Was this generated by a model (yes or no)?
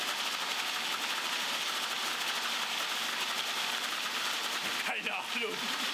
no